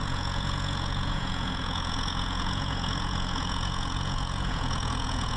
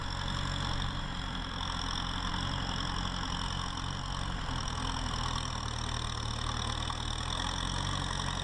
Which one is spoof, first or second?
first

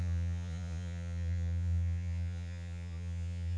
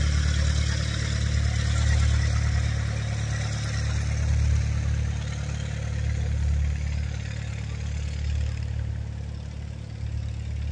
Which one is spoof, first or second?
first